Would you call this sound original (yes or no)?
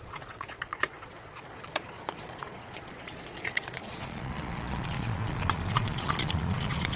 no